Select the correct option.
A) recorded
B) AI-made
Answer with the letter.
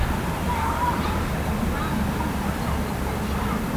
A